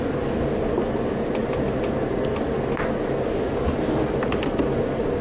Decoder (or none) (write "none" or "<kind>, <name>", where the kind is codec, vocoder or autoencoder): none